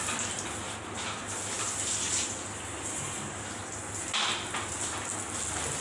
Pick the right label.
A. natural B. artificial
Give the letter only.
A